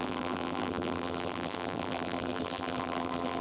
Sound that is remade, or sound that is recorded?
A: remade